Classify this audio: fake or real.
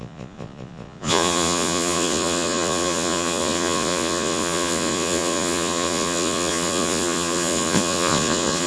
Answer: fake